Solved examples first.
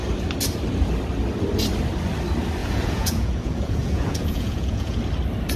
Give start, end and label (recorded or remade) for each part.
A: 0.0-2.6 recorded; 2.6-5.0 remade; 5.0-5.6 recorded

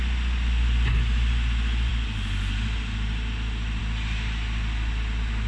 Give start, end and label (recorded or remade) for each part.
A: 0.0-5.5 recorded

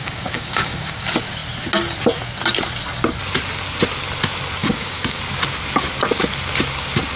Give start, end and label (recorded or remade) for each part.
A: 0.0-1.0 remade; 1.0-4.6 recorded; 4.6-5.2 remade; 5.2-7.2 recorded

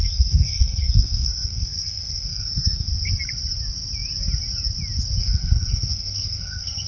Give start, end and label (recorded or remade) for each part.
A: 0.0-2.9 remade; 2.9-5.2 recorded; 5.2-6.9 remade

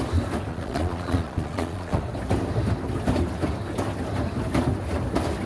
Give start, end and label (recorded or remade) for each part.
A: 0.0-0.5 recorded; 0.5-2.0 remade; 2.0-5.5 recorded

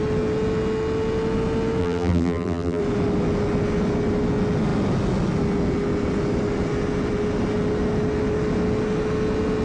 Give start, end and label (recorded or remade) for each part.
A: 0.0-1.8 recorded; 1.8-2.8 remade; 2.8-9.6 recorded

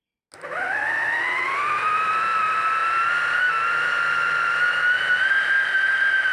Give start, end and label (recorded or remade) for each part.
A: 0.0-6.3 recorded